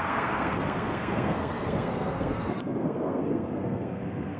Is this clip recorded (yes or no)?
no